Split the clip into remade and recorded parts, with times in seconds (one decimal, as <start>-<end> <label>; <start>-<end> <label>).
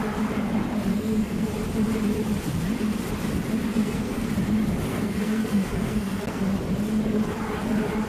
0.0-0.9 recorded; 0.9-1.5 remade; 1.5-3.7 recorded; 3.7-4.3 remade; 4.3-4.9 recorded; 4.9-6.4 remade; 6.4-8.1 recorded